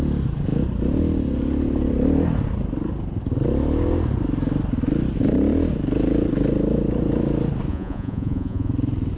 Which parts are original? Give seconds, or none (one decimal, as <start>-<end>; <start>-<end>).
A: 0.0-7.7; 8.7-9.2